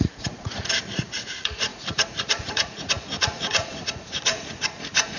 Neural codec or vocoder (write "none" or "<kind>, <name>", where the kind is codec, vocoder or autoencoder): vocoder, Vocos